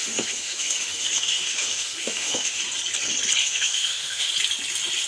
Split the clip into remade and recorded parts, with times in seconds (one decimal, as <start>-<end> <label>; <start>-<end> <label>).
0.0-2.6 remade; 2.6-3.4 recorded; 3.4-4.3 remade; 4.3-5.1 recorded